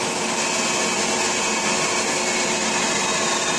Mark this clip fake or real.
real